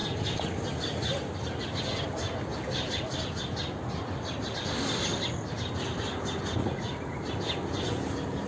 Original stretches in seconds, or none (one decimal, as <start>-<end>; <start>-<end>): 0.0-6.6; 7.3-8.5